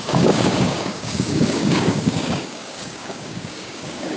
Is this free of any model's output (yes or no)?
no